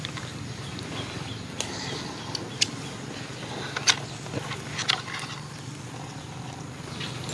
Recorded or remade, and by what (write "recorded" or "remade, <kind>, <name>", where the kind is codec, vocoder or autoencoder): recorded